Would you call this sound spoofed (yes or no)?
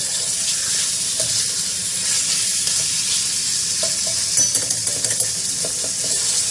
no